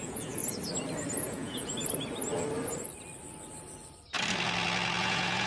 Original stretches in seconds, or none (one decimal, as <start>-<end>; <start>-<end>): 0.4-1.2; 1.7-5.0